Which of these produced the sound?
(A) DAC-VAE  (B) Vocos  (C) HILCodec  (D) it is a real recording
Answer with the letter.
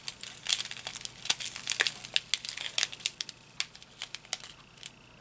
D